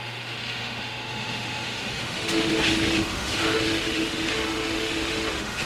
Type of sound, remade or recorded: remade